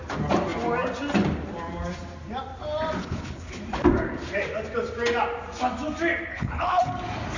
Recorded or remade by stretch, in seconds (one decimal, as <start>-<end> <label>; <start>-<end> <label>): 0.0-3.0 recorded; 3.0-3.6 remade; 3.6-6.3 recorded; 6.3-6.9 remade; 6.9-7.4 recorded